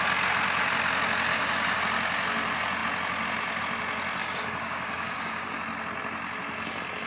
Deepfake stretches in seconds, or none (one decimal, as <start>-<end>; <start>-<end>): 1.3-1.8; 4.2-5.6